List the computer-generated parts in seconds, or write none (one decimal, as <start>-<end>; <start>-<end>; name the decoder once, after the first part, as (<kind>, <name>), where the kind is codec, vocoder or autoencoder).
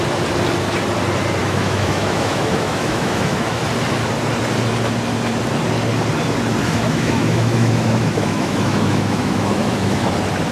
1.4-3.6 (autoencoder, DAC-VAE); 6.6-10.1